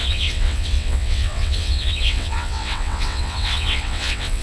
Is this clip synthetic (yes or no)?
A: yes